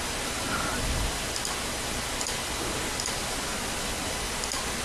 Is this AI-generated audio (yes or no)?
no